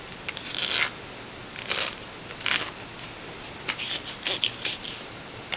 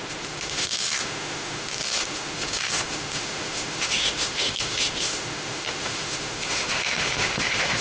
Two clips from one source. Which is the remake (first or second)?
second